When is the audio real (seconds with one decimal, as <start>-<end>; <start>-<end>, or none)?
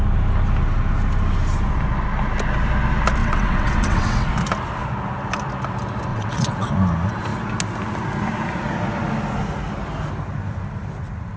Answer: 0.0-3.2; 4.3-6.1; 6.7-11.4